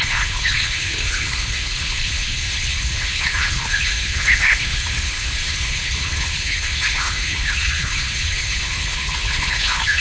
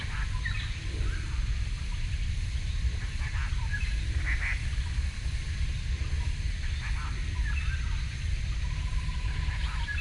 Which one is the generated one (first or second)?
first